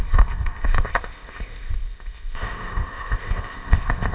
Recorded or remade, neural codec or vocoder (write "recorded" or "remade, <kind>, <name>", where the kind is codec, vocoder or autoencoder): remade, codec, ZipCodec